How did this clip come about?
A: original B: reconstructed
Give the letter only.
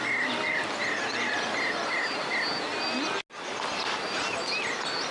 A